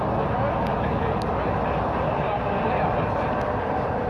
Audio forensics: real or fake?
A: real